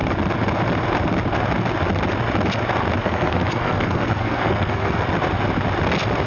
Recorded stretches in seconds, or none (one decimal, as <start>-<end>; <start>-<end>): 0.0-3.0; 5.0-6.3